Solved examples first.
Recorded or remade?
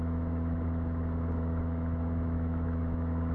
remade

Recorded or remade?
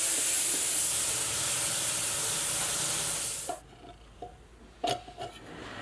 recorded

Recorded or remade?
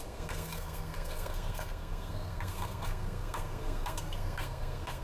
remade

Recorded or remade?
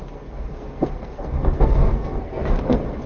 remade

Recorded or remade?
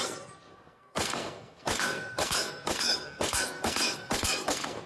remade